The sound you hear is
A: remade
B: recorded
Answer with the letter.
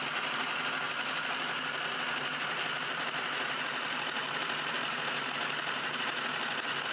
B